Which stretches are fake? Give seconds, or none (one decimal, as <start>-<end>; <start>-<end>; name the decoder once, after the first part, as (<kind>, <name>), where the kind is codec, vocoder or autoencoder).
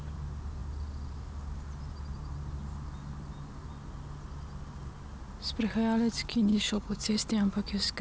6.5-7.1 (codec, DAC)